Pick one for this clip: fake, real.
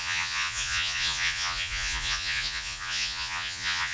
fake